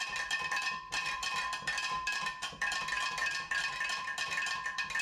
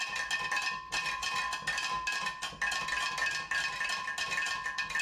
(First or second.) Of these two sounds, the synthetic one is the first